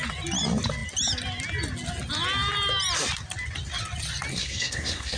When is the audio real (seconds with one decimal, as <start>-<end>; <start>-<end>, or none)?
0.0-4.3